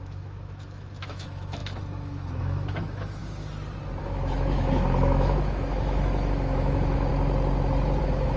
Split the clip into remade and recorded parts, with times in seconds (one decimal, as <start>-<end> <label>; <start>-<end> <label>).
0.0-3.2 remade; 3.2-4.0 recorded; 4.0-7.1 remade; 7.1-8.0 recorded; 8.0-8.4 remade